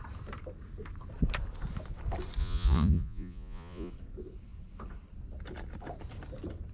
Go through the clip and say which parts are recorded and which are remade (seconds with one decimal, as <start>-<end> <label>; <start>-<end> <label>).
0.0-2.4 recorded; 2.4-3.9 remade; 3.9-6.7 recorded